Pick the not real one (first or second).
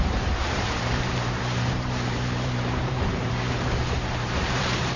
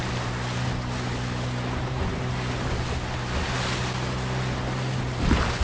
first